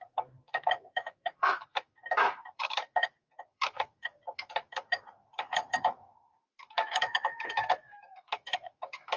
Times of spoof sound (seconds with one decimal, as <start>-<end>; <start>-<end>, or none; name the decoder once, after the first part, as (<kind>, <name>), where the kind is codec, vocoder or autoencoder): 0.0-9.2 (autoencoder, DAC-VAE)